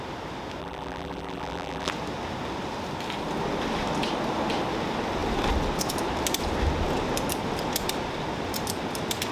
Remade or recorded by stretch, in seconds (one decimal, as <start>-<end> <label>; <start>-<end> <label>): 0.0-0.6 recorded; 0.6-1.9 remade; 1.9-9.3 recorded